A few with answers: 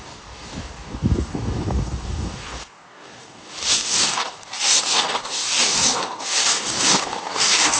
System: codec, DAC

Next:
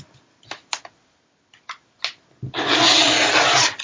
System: none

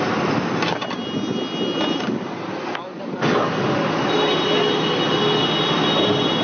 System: none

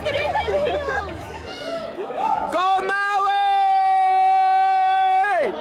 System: codec, DAC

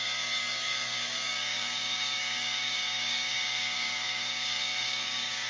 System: codec, DAC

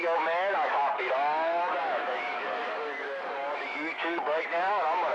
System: codec, DAC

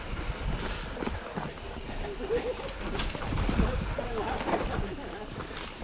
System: none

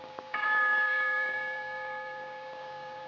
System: codec, DAC